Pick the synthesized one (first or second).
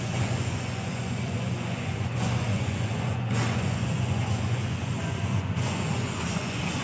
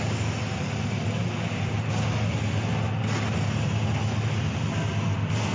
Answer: first